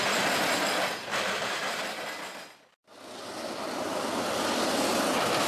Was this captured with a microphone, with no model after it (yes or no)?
yes